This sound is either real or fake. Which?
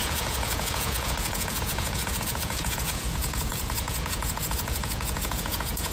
fake